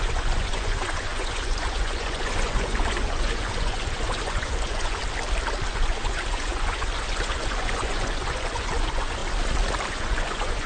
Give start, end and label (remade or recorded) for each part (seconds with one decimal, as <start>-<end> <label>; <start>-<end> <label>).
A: 0.0-5.0 remade; 5.0-5.7 recorded; 5.7-9.2 remade; 9.2-9.9 recorded; 9.9-10.7 remade